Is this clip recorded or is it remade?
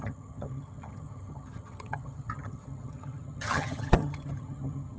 remade